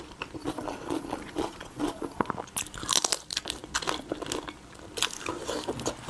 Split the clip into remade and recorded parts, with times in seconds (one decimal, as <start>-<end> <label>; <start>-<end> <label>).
0.0-0.4 recorded; 0.4-2.3 remade; 2.3-6.1 recorded